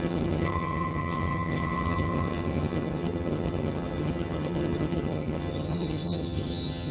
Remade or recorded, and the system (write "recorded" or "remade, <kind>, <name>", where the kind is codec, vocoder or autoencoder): remade, vocoder, HiFi-GAN